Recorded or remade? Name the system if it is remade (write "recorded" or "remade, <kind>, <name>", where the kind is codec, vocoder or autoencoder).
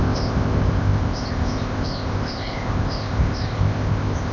remade, codec, ZipCodec